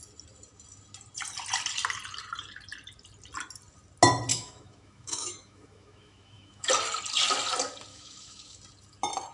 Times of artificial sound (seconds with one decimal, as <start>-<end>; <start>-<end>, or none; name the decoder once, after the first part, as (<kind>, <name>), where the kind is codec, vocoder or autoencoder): 4.3-6.7 (autoencoder, DAC-VAE); 7.9-8.6